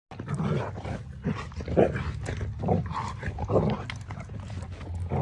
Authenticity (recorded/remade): recorded